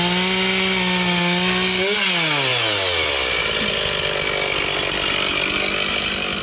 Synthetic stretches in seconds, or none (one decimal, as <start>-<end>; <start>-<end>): none